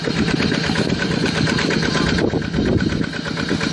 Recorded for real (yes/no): yes